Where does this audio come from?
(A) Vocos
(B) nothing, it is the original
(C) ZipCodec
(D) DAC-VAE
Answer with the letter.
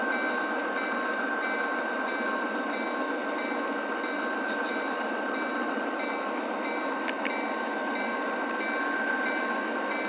B